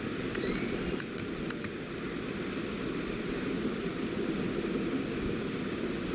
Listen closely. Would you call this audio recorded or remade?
recorded